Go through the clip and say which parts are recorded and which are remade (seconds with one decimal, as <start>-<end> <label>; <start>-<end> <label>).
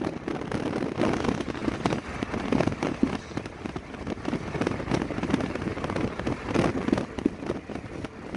0.0-8.4 recorded